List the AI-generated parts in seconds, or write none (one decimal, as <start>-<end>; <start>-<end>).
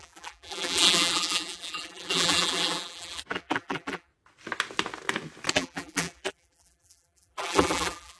0.0-4.1; 5.5-8.2